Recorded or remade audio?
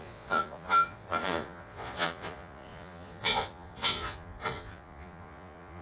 remade